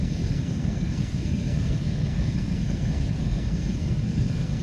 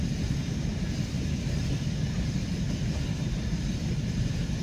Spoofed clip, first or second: first